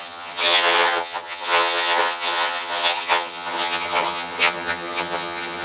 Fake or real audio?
fake